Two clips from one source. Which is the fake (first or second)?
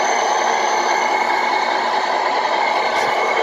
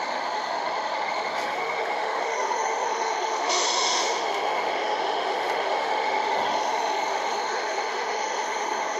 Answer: second